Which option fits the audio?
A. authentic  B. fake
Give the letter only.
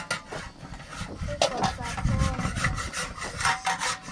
A